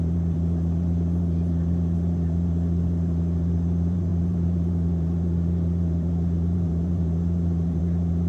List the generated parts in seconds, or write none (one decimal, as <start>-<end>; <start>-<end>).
0.0-8.3